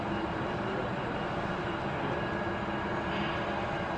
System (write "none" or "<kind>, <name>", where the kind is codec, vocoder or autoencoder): none